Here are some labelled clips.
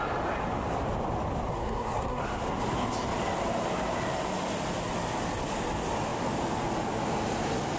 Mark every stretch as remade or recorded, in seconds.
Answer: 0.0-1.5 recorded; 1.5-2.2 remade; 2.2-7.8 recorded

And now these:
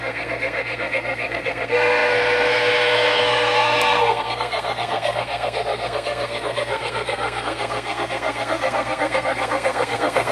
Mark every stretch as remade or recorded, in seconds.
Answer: 0.0-10.3 remade

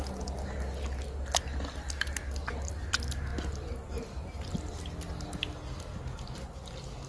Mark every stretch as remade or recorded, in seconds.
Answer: 0.0-7.1 recorded

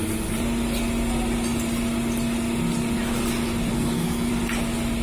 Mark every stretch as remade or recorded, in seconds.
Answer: 0.0-3.7 recorded; 3.7-4.3 remade; 4.3-5.0 recorded

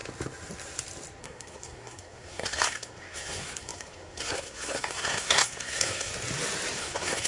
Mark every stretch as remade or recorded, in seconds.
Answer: 0.0-1.2 recorded; 1.2-6.1 remade; 6.1-6.8 recorded; 6.8-7.3 remade